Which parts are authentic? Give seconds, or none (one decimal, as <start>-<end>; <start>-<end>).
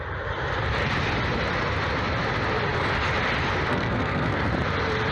0.0-3.7; 4.5-5.1